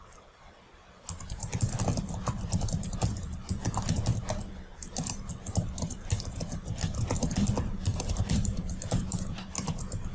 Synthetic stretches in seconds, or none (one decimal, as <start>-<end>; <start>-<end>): 7.9-9.5